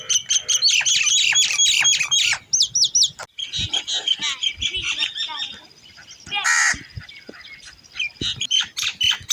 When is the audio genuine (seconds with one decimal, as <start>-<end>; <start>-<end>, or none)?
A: 0.0-1.9; 2.4-9.3